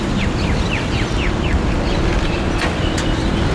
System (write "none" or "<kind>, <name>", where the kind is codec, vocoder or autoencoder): none